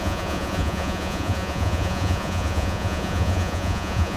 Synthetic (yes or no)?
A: yes